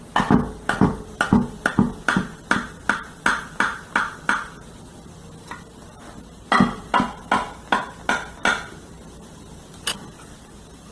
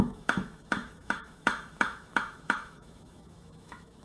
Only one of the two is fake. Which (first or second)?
second